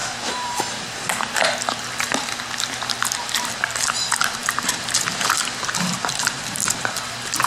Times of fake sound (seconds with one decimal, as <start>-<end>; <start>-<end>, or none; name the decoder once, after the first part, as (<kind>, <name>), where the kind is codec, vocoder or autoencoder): 4.4-7.0 (vocoder, BigVGAN v2)